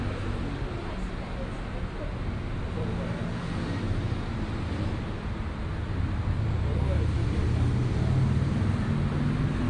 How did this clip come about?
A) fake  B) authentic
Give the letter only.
B